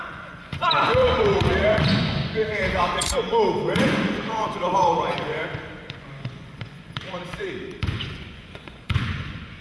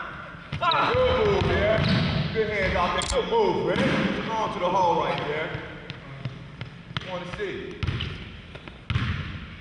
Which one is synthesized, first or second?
first